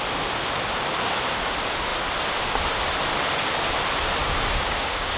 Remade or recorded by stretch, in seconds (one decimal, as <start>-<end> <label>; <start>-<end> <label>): 0.0-4.2 recorded; 4.2-5.2 remade